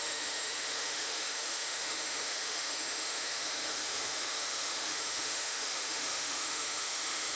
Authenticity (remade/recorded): remade